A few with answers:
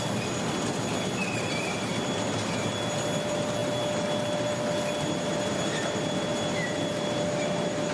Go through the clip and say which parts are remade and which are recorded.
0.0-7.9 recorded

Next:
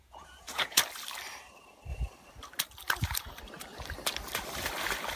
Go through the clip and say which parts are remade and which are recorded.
0.0-0.8 remade; 0.8-5.2 recorded

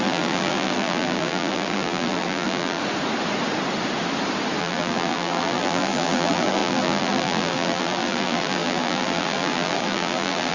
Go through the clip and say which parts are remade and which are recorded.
0.0-2.8 remade; 2.8-4.6 recorded; 4.6-10.5 remade

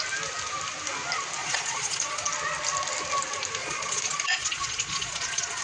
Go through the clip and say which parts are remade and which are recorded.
0.0-1.4 recorded; 1.4-2.3 remade; 2.3-3.6 recorded; 3.6-5.6 remade

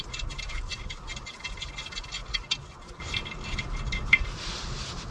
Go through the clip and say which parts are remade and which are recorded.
0.0-1.8 remade; 1.8-4.1 recorded; 4.1-5.1 remade

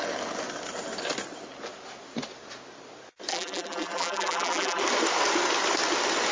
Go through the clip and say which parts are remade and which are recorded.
0.0-3.3 recorded; 3.3-4.8 remade; 4.8-6.3 recorded